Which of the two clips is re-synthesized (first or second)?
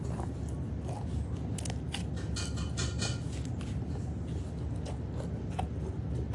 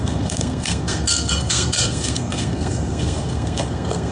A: second